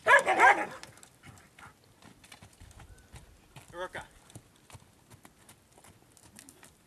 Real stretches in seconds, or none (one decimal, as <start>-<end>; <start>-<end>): 0.0-3.2; 4.0-6.9